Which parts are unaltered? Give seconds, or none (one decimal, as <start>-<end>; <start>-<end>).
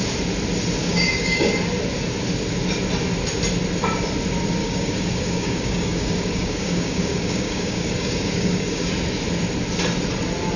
0.0-0.8; 1.5-4.6; 8.9-10.6